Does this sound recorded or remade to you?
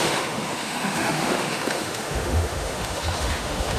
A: remade